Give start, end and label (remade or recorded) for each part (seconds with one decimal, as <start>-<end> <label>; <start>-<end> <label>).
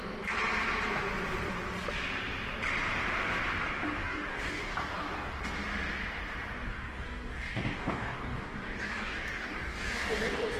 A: 0.0-4.0 recorded; 4.0-5.4 remade; 5.4-6.7 recorded; 6.7-10.6 remade